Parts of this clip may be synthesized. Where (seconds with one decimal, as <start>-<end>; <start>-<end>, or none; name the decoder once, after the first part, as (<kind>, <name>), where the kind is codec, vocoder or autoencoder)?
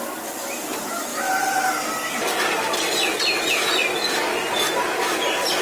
none